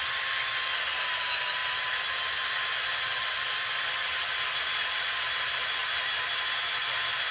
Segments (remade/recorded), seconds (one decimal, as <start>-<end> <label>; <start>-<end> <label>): 0.0-7.3 recorded

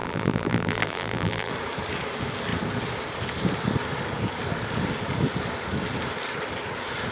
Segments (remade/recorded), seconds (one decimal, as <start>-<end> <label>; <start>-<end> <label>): 0.0-1.5 remade; 1.5-7.1 recorded

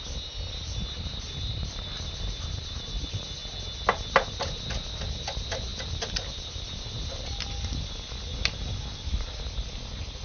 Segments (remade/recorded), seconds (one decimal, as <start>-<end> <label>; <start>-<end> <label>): 0.0-1.1 recorded; 1.1-2.9 remade; 2.9-10.2 recorded

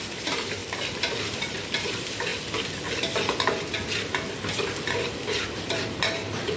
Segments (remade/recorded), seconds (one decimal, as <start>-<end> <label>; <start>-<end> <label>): 0.0-0.6 remade; 0.6-1.3 recorded; 1.3-2.3 remade; 2.3-5.6 recorded; 5.6-6.6 remade

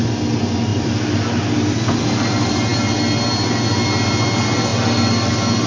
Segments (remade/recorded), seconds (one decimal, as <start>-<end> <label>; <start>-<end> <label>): 0.0-0.7 recorded; 0.7-2.1 remade; 2.1-4.7 recorded; 4.7-5.3 remade; 5.3-5.7 recorded

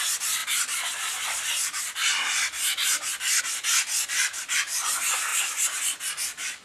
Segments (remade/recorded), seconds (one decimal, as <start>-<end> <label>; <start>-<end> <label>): 0.0-5.3 recorded; 5.3-5.8 remade; 5.8-6.6 recorded

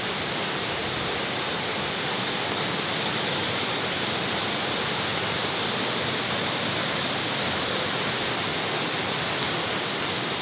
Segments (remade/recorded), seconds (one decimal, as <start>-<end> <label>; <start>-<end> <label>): 0.0-0.8 recorded; 0.8-2.2 remade; 2.2-6.8 recorded; 6.8-8.5 remade; 8.5-10.4 recorded

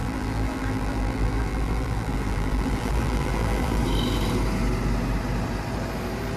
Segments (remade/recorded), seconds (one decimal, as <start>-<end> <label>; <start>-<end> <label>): 0.0-3.8 remade; 3.8-6.4 recorded